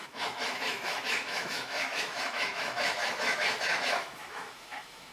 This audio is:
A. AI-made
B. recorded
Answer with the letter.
A